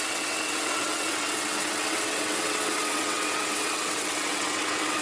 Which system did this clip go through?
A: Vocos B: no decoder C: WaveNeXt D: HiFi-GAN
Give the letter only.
C